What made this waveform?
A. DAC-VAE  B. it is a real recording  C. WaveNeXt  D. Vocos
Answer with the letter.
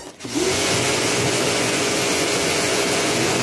D